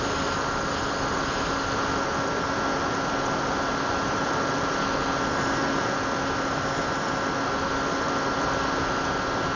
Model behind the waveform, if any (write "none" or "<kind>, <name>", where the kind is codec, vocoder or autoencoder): none